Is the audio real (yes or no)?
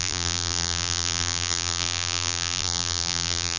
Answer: no